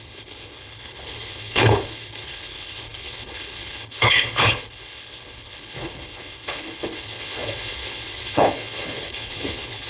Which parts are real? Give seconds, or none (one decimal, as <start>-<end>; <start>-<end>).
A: none